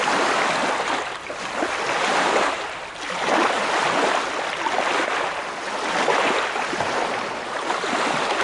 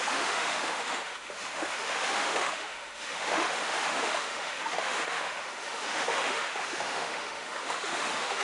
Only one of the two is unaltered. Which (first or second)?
first